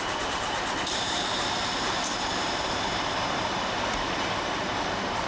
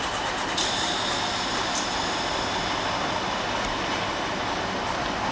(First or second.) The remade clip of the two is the first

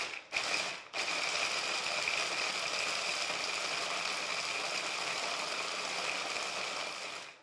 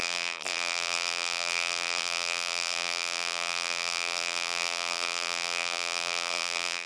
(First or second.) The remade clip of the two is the second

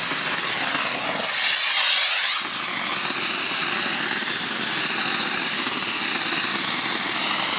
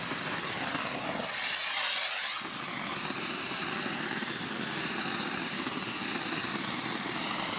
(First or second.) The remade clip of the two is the second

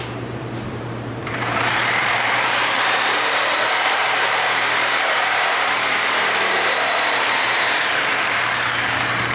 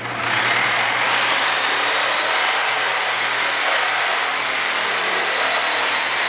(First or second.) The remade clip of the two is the first